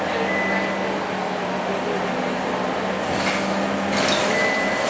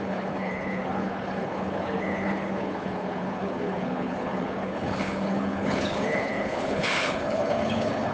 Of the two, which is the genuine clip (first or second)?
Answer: first